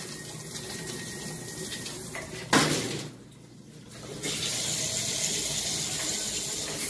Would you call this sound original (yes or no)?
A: yes